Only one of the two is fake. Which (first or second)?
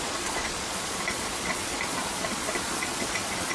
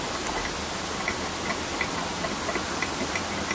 first